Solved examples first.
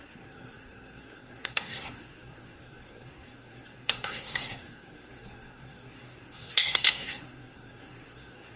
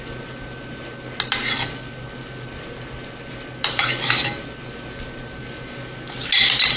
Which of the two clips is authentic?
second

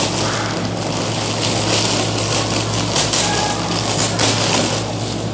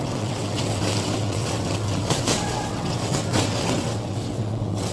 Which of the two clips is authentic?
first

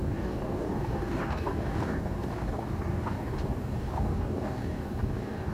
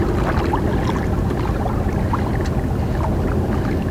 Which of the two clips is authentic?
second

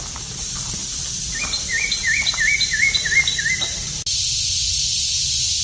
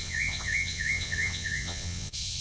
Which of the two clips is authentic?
first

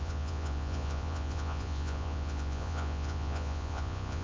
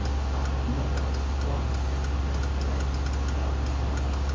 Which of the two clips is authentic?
second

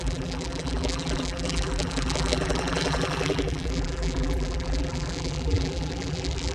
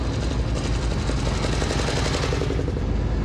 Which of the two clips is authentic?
second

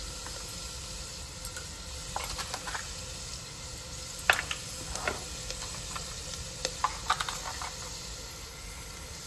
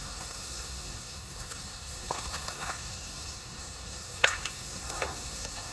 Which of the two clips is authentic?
first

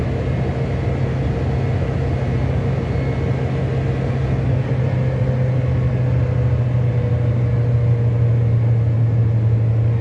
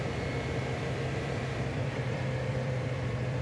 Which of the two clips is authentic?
first